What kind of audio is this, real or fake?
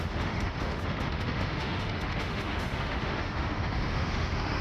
fake